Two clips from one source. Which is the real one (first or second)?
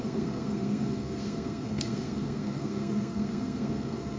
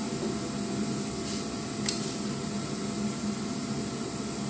second